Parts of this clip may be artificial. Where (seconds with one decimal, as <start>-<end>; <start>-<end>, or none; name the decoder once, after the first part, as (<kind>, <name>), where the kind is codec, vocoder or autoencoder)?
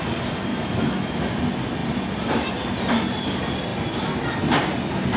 0.5-1.3 (autoencoder, DAC-VAE)